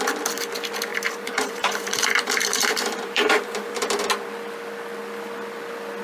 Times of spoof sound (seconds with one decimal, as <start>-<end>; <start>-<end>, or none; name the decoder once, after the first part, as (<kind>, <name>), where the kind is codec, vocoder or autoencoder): 0.9-4.0 (vocoder, BigVGAN v2)

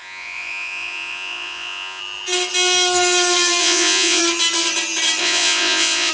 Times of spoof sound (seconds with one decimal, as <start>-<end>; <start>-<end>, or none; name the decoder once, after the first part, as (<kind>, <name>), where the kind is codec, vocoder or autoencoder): 0.0-2.0 (vocoder, Vocos); 3.6-4.2; 5.2-6.1

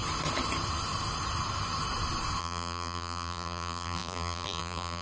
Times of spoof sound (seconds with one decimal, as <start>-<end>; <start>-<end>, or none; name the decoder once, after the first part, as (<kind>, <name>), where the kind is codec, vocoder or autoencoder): 2.4-5.0 (vocoder, BigVGAN v2)

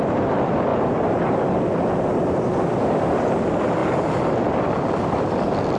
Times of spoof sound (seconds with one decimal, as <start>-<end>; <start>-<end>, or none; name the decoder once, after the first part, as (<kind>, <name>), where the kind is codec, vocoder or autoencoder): none

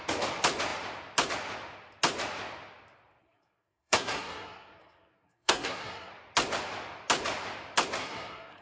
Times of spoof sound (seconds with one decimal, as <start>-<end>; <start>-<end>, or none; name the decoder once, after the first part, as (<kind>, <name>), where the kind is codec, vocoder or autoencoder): 3.2-6.1 (codec, SNAC); 8.0-8.6

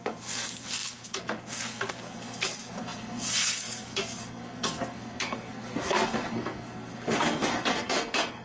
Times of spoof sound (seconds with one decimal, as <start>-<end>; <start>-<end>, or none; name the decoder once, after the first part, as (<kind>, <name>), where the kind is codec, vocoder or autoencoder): 0.0-8.4 (codec, SNAC)

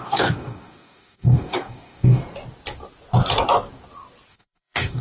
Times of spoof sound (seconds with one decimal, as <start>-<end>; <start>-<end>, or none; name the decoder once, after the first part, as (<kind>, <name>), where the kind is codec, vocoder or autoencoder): 0.0-2.2 (codec, DAC); 4.3-5.0

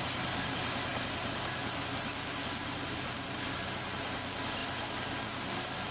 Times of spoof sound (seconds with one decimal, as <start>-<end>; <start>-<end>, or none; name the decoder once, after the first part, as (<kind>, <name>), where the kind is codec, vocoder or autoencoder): none